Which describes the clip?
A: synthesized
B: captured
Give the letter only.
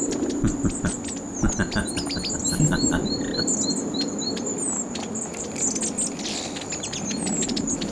B